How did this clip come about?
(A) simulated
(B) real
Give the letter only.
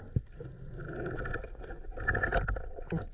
B